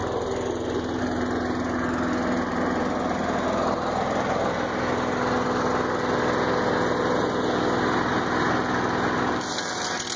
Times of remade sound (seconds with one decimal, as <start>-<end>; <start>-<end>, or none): none